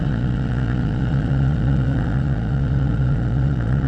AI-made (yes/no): yes